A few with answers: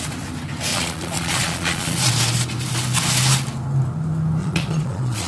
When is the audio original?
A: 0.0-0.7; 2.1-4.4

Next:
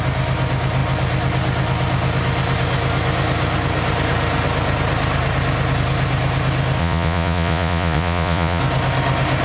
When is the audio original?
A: 0.0-6.8; 8.6-9.4

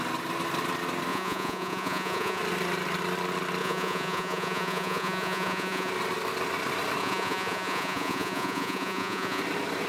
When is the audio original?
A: 0.0-1.1; 2.4-3.6; 5.9-7.0; 9.4-9.9

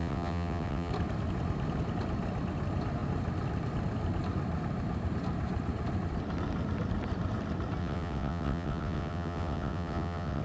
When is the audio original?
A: 0.9-7.8

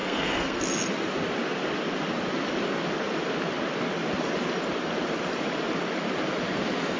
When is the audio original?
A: 0.6-7.0

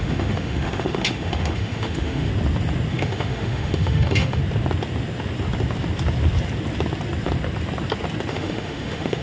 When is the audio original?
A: 2.3-2.9; 4.4-8.3

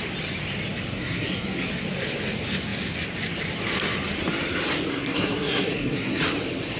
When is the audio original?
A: 0.0-0.9; 1.7-4.9; 6.2-6.8